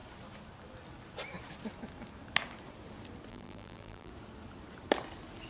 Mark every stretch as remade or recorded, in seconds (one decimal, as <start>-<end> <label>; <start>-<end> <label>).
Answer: 0.0-3.3 recorded; 3.3-4.1 remade; 4.1-5.5 recorded